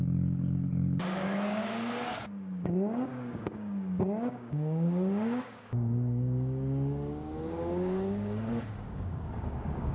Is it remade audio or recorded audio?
remade